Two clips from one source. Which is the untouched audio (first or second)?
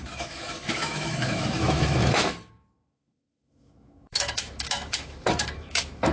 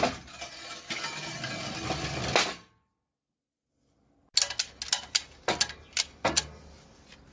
second